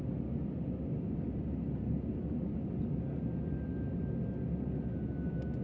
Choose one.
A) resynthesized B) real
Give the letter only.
B